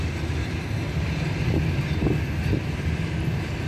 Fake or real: real